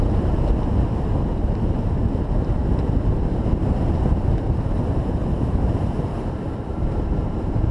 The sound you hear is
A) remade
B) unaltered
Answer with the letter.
A